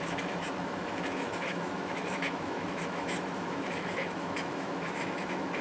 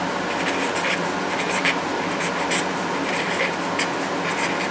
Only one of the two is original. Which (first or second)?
second